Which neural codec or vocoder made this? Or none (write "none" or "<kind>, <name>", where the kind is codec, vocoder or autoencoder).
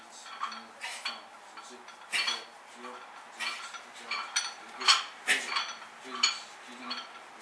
none